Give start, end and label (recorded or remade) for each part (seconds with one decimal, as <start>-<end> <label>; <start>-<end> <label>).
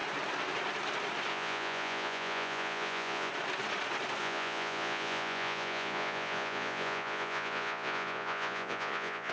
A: 0.0-1.3 recorded; 1.3-3.3 remade; 3.3-4.2 recorded; 4.2-9.3 remade